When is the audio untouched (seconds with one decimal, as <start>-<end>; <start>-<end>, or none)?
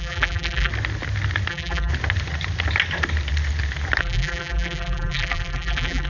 0.7-1.5; 1.9-4.0